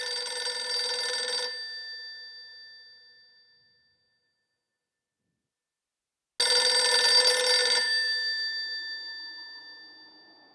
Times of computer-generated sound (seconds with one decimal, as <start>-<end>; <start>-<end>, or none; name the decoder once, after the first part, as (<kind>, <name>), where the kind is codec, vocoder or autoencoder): 7.6-9.6 (vocoder, BigVGAN v2)

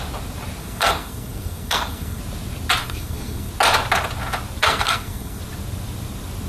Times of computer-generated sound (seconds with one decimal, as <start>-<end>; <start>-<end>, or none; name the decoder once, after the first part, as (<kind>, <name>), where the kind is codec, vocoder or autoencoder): 0.6-2.2 (codec, SNAC); 2.8-3.5; 4.6-5.4

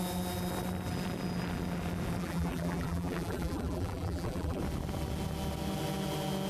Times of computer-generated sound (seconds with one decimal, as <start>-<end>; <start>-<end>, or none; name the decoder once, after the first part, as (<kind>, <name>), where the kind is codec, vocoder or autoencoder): 2.2-4.6 (vocoder, BigVGAN v2)

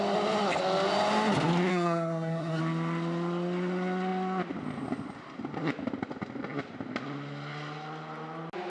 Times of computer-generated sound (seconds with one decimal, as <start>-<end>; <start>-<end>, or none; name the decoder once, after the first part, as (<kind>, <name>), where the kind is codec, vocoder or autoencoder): 1.7-2.6 (codec, SNAC)

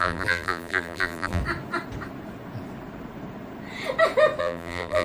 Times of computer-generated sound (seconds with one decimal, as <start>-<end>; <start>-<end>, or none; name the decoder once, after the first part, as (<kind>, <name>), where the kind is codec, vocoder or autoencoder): 0.0-1.4 (vocoder, BigVGAN v2); 4.4-5.0

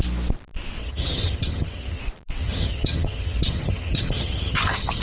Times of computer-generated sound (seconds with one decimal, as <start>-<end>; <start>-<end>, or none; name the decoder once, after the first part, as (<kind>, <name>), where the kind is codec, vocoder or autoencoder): 0.8-2.0 (vocoder, HiFi-GAN); 2.4-5.0

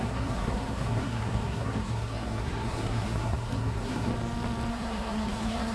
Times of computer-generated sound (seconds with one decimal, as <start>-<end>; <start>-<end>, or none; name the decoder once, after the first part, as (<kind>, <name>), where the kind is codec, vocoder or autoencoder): 0.0-4.1 (codec, SNAC); 4.7-5.7

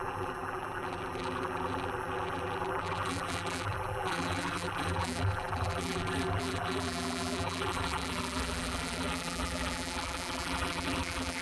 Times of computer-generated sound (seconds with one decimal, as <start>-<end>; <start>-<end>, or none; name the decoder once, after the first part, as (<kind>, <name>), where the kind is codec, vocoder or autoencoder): 0.0-11.4 (vocoder, BigVGAN v2)